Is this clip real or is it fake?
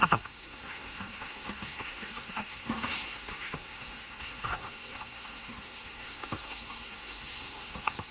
fake